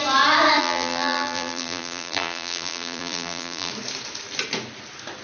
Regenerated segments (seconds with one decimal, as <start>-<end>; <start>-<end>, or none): 0.6-3.7